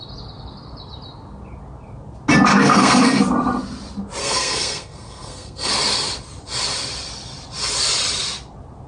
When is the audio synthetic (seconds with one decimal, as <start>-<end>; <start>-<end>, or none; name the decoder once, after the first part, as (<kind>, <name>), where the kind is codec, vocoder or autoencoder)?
2.5-3.2 (codec, SNAC); 4.2-5.7